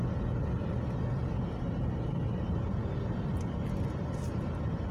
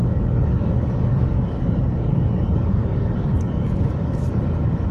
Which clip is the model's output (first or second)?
second